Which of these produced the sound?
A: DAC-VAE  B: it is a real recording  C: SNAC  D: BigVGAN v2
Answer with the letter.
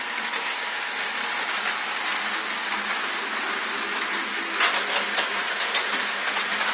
B